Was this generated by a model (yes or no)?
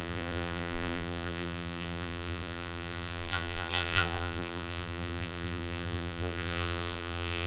yes